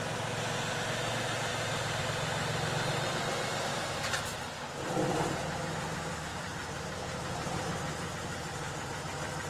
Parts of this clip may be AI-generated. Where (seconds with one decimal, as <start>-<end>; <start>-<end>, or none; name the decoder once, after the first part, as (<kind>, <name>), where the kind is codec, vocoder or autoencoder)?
1.5-2.0 (vocoder, BigVGAN v2); 6.3-8.9

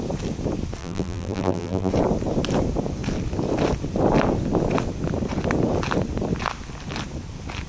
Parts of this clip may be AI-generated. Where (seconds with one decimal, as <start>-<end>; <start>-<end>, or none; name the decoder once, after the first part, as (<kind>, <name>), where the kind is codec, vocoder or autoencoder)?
0.8-1.9 (vocoder, BigVGAN v2)

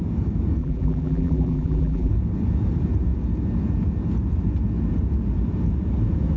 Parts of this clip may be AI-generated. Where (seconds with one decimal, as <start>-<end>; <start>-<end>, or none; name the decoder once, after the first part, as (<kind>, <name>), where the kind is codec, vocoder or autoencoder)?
0.6-2.1 (vocoder, BigVGAN v2)